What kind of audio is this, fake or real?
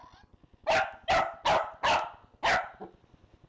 real